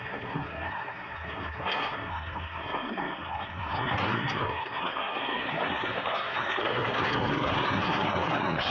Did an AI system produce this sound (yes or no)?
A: yes